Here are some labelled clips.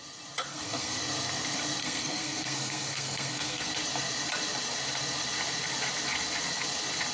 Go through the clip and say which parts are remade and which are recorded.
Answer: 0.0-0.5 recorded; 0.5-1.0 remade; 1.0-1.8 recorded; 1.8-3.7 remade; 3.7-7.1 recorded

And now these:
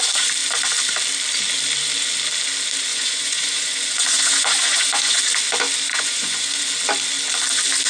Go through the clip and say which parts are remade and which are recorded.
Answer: 0.0-2.9 recorded; 2.9-5.2 remade; 5.2-5.9 recorded; 5.9-6.7 remade; 6.7-7.9 recorded

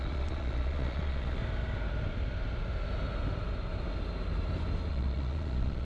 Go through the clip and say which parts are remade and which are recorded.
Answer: 0.0-1.4 remade; 1.4-4.9 recorded; 4.9-5.8 remade

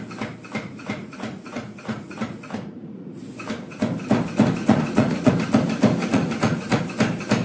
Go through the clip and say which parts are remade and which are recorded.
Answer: 0.0-0.6 recorded; 0.6-3.2 remade; 3.2-4.6 recorded; 4.6-5.3 remade; 5.3-6.0 recorded; 6.0-6.8 remade; 6.8-7.4 recorded

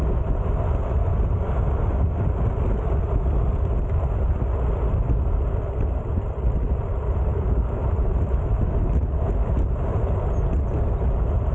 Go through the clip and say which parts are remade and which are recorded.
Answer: 0.0-7.3 recorded; 7.3-7.8 remade; 7.8-11.5 recorded

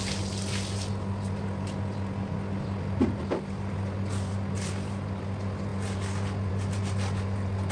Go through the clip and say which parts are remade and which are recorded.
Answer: 0.0-7.7 recorded